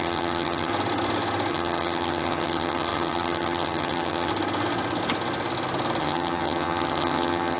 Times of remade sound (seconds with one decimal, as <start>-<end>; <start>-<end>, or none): 0.0-0.7; 1.5-4.3; 6.0-7.6